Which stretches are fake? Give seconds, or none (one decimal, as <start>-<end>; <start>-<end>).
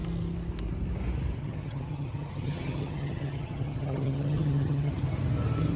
1.4-4.9